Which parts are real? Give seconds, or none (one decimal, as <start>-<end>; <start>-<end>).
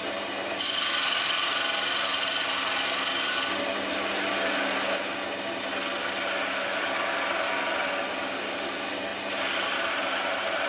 0.9-9.1; 10.0-10.7